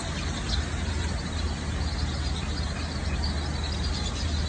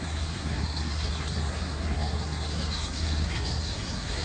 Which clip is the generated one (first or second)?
second